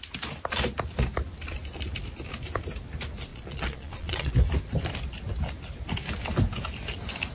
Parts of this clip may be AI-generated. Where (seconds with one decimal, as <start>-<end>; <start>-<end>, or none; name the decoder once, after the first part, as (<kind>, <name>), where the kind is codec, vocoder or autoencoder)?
3.3-4.3 (vocoder, Vocos)